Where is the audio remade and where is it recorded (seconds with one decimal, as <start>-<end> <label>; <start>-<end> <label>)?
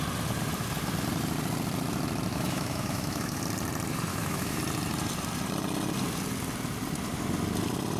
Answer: 0.0-2.3 recorded; 2.3-3.4 remade; 3.4-4.1 recorded; 4.1-4.6 remade; 4.6-8.0 recorded